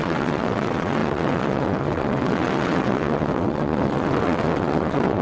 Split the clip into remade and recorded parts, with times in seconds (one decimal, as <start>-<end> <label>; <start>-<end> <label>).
0.0-5.2 remade